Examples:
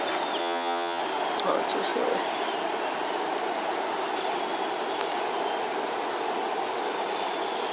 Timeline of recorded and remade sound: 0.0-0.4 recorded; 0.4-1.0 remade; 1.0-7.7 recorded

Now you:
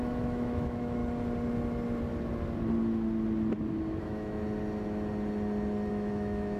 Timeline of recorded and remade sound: 0.0-1.0 remade; 1.0-4.0 recorded; 4.0-4.4 remade; 4.4-5.9 recorded; 5.9-6.6 remade

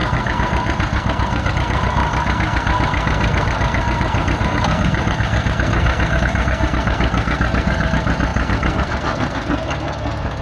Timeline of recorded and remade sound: 0.0-10.4 remade

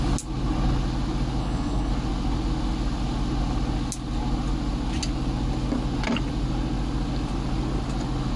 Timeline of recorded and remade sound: 0.0-1.4 recorded; 1.4-1.9 remade; 1.9-8.4 recorded

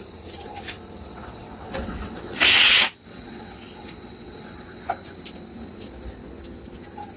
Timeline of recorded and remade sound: 0.0-1.2 recorded; 1.2-4.9 remade; 4.9-7.2 recorded